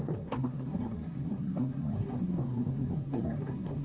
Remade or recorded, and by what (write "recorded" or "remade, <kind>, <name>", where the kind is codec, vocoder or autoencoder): remade, codec, SNAC